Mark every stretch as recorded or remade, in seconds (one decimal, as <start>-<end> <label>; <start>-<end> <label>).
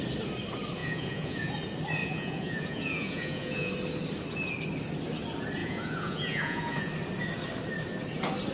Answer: 0.0-0.8 recorded; 0.8-1.5 remade; 1.5-2.0 recorded; 2.0-3.7 remade; 3.7-5.6 recorded; 5.6-6.9 remade; 6.9-8.5 recorded